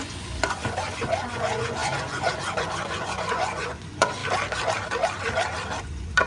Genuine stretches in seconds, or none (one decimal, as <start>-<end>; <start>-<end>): 4.2-5.8

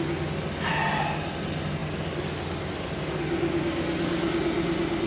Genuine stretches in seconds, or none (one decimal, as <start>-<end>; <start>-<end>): 0.0-5.1

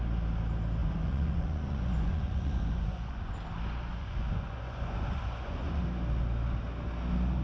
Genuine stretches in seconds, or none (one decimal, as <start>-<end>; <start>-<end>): 0.0-0.8; 3.3-3.9; 5.8-7.4

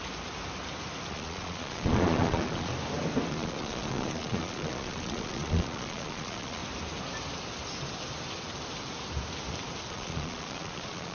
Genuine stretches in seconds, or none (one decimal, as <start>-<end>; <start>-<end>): 0.0-1.1; 2.7-3.3; 6.6-9.9

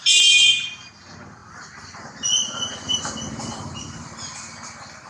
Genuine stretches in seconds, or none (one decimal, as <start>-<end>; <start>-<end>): 0.0-5.1

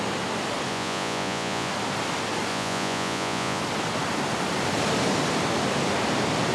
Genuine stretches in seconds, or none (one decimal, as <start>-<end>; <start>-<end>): 0.0-0.7; 1.7-2.5; 3.6-6.5